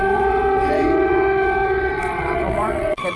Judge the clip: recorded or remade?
remade